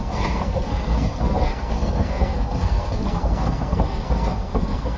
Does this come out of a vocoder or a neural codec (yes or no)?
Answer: yes